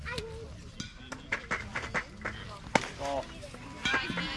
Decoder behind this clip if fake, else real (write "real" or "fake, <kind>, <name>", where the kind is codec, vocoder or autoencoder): real